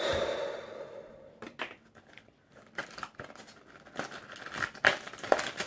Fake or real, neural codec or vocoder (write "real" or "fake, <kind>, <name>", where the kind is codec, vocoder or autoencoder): real